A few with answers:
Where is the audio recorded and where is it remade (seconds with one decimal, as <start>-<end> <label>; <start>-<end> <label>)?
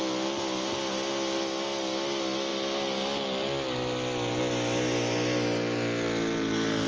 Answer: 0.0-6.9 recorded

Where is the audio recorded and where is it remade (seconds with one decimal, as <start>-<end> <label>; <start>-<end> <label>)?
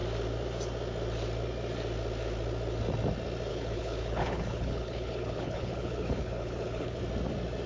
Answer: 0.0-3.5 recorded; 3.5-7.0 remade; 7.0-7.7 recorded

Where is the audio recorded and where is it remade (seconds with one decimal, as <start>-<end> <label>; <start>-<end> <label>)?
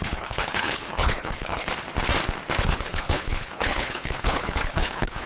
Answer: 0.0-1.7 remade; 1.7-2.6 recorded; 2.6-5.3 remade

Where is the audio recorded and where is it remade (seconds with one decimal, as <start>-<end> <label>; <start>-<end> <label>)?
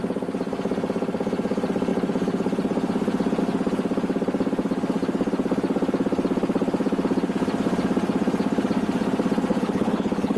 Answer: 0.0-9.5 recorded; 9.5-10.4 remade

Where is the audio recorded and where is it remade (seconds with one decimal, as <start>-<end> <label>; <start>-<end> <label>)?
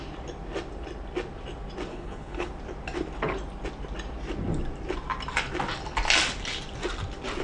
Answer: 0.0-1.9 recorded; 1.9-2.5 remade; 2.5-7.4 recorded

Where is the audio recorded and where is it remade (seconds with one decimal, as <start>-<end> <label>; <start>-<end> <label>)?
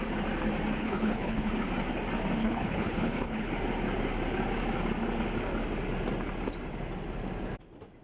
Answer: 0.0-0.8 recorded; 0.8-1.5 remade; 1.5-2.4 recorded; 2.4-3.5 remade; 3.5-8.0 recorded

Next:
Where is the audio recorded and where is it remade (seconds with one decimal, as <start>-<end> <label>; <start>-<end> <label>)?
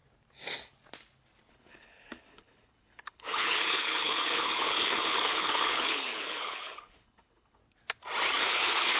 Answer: 0.0-1.5 recorded; 1.5-7.6 remade; 7.6-8.4 recorded; 8.4-9.0 remade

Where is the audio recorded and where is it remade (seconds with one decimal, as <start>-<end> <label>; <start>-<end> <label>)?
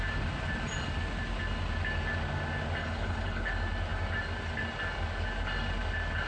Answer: 0.0-2.8 recorded; 2.8-3.5 remade; 3.5-6.3 recorded